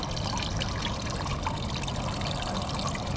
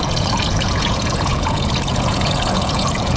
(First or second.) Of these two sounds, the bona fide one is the first